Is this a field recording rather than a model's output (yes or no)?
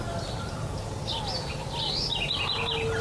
yes